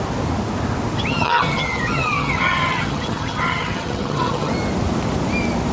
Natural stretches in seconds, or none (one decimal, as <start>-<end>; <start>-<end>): 0.0-1.1; 4.5-5.7